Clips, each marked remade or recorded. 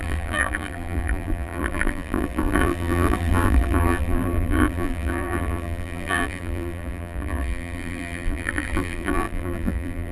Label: remade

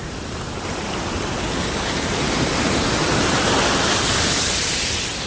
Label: recorded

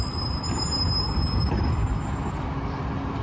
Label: recorded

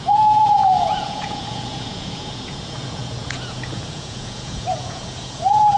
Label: remade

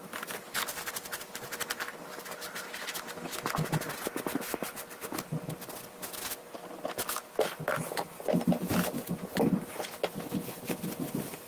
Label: recorded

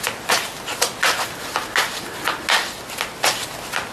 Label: recorded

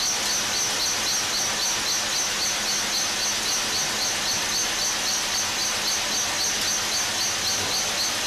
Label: recorded